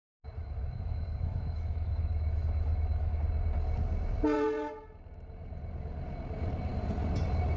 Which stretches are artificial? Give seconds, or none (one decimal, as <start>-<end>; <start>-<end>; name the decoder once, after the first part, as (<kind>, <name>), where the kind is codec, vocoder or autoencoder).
0.4-3.2 (autoencoder, DAC-VAE)